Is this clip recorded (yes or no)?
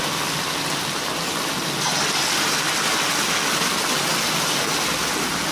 yes